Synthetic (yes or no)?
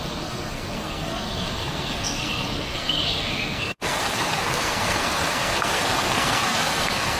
yes